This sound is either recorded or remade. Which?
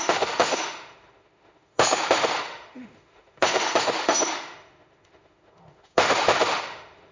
remade